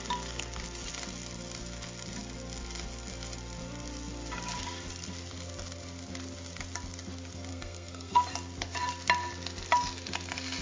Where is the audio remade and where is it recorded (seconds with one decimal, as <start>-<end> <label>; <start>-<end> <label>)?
0.0-7.5 recorded; 7.5-8.2 remade; 8.2-10.6 recorded